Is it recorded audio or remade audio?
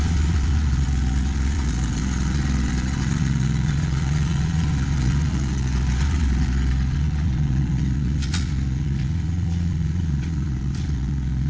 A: remade